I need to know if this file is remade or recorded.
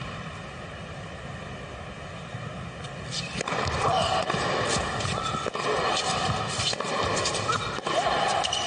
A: recorded